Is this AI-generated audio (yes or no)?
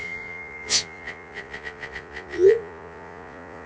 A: yes